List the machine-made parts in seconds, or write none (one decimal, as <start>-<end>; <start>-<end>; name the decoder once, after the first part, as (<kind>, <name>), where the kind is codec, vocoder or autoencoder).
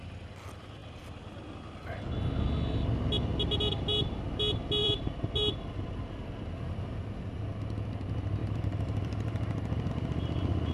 4.8-6.5 (vocoder, BigVGAN v2); 8.4-9.9